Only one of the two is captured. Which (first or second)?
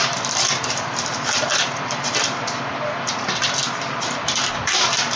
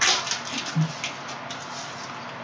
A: second